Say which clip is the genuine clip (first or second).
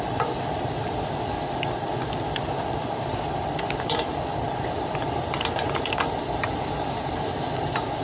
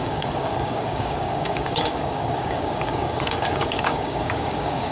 first